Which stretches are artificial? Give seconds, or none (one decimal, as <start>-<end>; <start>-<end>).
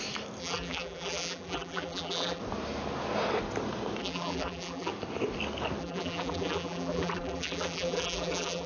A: 0.4-2.4; 4.0-4.9; 5.8-8.7